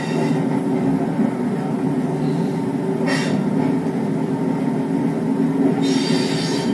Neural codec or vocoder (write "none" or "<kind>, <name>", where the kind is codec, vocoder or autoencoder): none